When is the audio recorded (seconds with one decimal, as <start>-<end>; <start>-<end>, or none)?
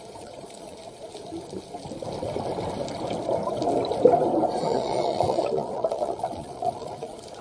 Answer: 0.8-4.6